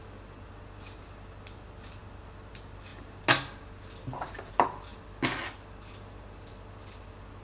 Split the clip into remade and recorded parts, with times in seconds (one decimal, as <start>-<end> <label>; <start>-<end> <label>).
0.0-7.4 recorded